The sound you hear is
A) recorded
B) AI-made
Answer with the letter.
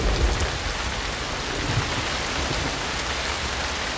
A